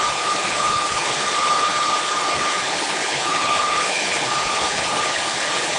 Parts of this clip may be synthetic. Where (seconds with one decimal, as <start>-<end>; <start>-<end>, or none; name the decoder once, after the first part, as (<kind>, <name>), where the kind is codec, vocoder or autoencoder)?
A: 0.0-5.8 (codec, HILCodec)